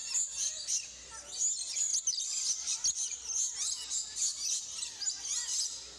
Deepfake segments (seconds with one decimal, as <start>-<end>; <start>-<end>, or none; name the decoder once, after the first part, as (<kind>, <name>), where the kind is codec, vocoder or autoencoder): none